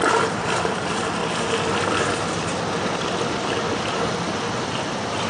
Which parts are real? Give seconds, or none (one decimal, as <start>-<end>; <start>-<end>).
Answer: 0.0-5.3